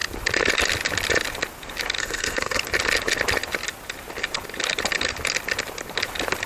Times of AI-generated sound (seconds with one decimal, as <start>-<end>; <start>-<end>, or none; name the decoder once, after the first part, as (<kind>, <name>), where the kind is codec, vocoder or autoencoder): 2.0-2.6 (codec, SNAC)